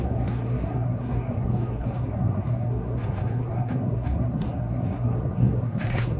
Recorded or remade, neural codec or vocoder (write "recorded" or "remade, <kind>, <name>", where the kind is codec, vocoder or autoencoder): remade, codec, SNAC